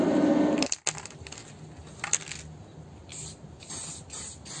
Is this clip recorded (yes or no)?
yes